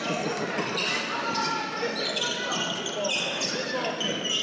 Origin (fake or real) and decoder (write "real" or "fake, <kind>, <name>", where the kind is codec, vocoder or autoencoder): real